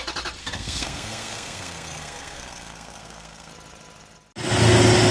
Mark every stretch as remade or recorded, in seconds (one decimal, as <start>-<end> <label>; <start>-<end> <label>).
0.0-0.4 recorded; 0.4-3.5 remade; 3.5-5.1 recorded